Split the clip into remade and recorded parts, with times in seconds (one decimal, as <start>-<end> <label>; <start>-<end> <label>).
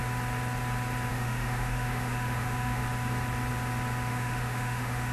0.0-1.1 recorded; 1.1-2.8 remade; 2.8-4.1 recorded; 4.1-5.1 remade